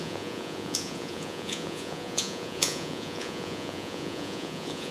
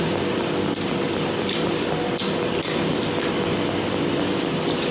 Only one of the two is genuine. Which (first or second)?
second